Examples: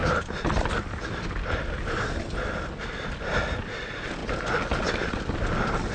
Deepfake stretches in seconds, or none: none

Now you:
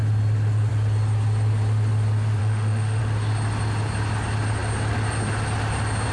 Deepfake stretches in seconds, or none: 2.4-3.0 (autoencoder, DAC-VAE)

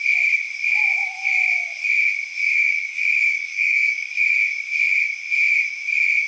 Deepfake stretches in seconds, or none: 2.4-4.2 (codec, DAC)

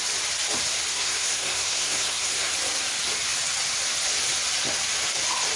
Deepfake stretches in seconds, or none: 0.9-2.5 (codec, SNAC)

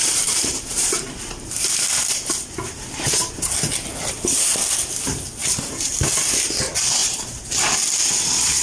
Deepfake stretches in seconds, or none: 0.0-1.5 (vocoder, BigVGAN v2); 5.4-6.3; 7.0-7.5

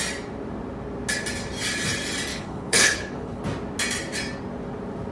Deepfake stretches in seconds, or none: 2.3-3.4 (codec, HILCodec)

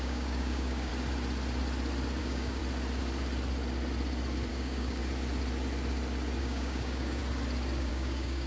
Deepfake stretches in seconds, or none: 0.0-0.9 (codec, DAC); 2.2-2.6; 4.5-5.0; 6.4-7.2; 7.9-8.5

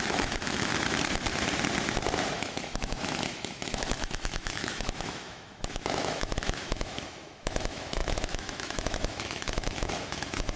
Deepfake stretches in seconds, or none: 0.0-0.7 (autoencoder, DAC-VAE); 2.3-10.6